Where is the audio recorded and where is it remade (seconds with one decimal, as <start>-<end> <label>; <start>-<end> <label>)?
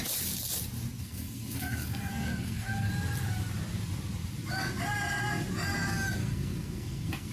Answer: 0.0-1.0 recorded; 1.0-2.9 remade; 2.9-6.2 recorded; 6.2-7.3 remade